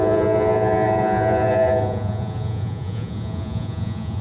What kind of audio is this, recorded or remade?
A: remade